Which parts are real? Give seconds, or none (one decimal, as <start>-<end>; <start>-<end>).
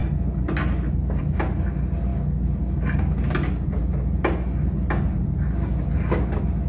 0.0-6.7